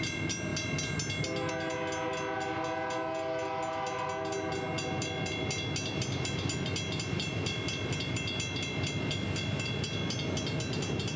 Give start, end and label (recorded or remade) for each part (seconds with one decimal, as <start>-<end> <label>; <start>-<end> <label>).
0.0-11.2 recorded